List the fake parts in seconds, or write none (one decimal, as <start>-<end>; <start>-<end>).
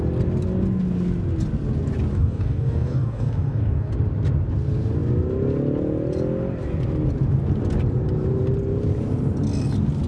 2.1-3.9